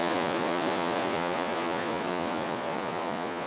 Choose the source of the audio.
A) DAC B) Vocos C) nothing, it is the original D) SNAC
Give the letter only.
B